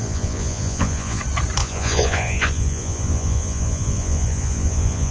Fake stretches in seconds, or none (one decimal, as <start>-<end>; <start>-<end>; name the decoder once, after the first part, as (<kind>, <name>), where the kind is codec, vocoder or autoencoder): 0.0-1.2 (vocoder, Vocos); 1.6-5.1